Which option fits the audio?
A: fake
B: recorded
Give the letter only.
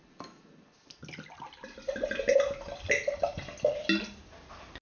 B